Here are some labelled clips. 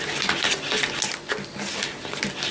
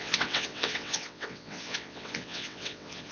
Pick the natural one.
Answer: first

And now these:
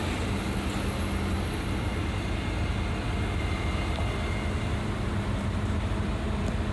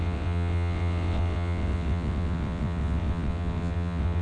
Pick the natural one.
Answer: first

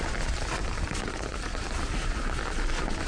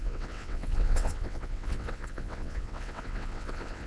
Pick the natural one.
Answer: first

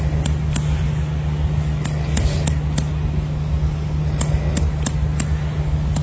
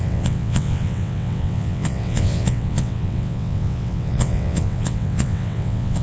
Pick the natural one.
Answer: first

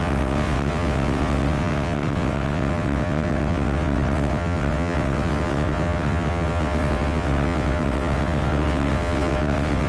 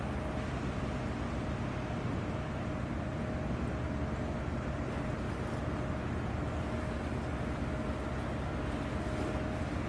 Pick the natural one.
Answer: second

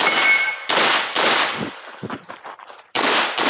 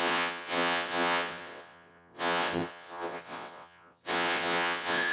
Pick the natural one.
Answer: first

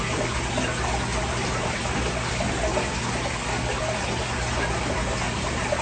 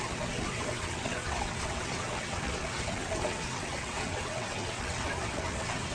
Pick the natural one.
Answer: first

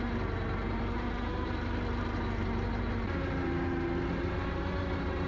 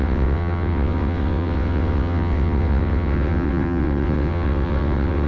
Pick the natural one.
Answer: first